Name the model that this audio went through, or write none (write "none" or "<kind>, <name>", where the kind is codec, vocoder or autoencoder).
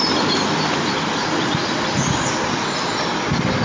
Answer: none